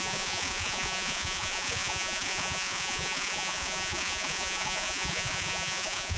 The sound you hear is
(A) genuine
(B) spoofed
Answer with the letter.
B